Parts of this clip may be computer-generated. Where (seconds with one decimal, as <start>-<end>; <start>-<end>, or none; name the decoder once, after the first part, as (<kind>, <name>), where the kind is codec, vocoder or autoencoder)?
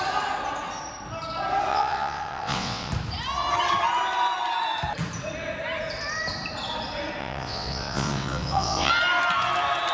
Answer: 1.7-2.9 (vocoder, WaveNeXt); 7.2-8.9